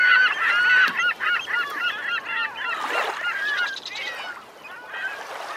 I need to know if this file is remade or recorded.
recorded